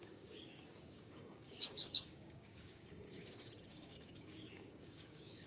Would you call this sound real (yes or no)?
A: no